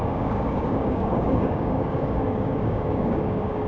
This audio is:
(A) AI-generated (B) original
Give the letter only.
A